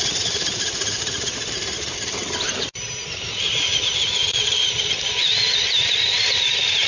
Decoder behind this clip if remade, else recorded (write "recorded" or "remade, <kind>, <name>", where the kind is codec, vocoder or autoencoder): remade, vocoder, BigVGAN v2